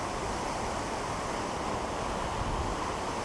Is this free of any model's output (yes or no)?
yes